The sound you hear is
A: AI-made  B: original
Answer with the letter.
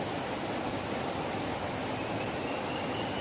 B